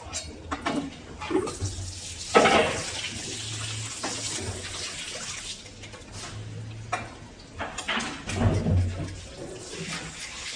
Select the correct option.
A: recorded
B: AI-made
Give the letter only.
A